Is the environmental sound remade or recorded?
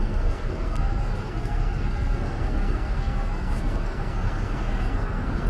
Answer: remade